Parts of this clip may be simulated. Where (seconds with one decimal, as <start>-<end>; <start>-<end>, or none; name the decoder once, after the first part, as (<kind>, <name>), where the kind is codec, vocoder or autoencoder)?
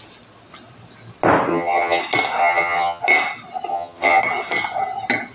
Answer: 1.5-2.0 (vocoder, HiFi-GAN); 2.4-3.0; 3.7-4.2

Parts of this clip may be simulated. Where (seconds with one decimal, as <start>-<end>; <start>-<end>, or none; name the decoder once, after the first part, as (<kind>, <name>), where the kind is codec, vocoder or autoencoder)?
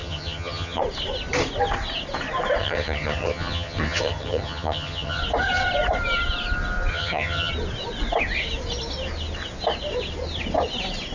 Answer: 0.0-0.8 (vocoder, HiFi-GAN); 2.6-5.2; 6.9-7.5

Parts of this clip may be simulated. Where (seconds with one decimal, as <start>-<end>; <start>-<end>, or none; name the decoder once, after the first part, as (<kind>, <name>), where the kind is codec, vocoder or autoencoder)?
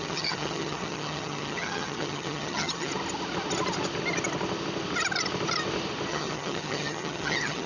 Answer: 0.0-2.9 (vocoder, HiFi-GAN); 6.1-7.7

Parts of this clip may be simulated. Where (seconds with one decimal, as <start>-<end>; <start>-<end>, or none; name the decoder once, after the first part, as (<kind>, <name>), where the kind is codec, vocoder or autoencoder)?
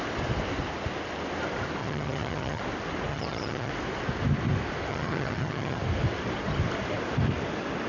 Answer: 1.8-2.6 (vocoder, HiFi-GAN); 3.1-3.7; 4.9-5.8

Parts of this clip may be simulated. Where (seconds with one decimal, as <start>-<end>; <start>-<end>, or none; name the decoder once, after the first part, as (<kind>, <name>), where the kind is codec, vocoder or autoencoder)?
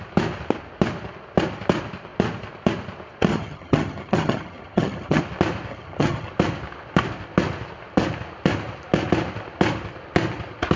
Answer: 3.3-5.2 (vocoder, HiFi-GAN); 5.7-6.3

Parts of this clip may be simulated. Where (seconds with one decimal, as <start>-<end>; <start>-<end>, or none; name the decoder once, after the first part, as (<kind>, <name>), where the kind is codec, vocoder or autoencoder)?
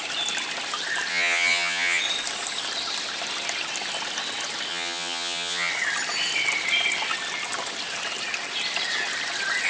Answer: 1.1-2.0 (vocoder, HiFi-GAN); 4.7-5.7